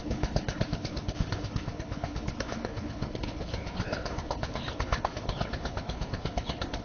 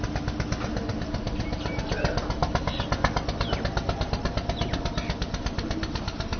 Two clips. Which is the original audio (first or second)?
second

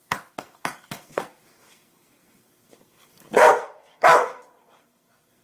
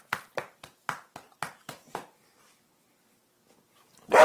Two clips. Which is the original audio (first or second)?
second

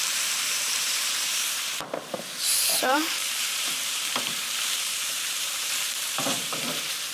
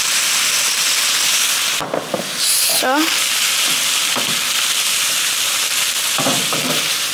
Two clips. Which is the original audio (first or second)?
second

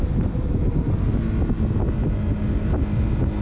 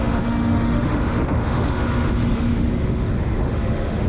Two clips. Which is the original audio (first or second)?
first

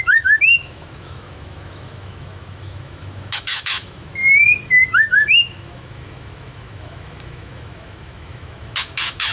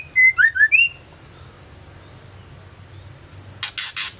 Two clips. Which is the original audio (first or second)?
second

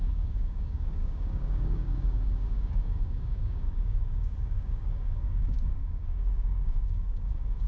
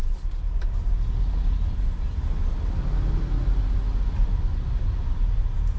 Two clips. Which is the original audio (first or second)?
second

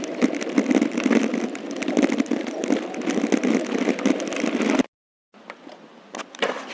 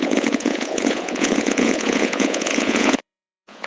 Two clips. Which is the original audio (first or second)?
first